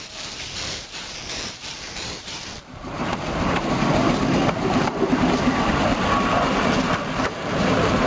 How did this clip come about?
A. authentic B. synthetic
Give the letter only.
B